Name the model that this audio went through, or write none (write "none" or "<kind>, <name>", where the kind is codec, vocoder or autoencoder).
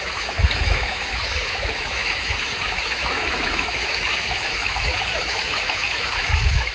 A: autoencoder, DAC-VAE